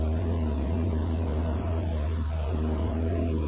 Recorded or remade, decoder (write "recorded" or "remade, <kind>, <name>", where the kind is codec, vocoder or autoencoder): remade, vocoder, Vocos